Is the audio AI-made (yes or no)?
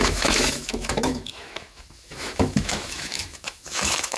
yes